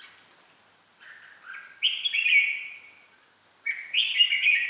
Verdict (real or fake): real